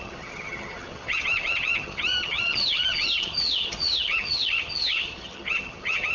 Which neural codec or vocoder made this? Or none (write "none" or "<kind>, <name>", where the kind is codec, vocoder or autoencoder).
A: vocoder, HiFi-GAN